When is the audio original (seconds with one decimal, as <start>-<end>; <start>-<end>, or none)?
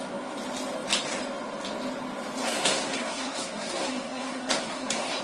0.0-2.4